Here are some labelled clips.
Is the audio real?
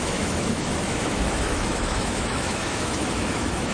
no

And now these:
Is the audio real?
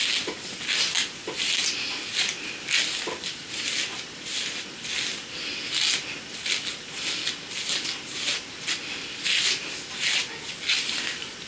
yes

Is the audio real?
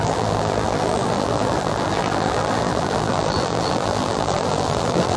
no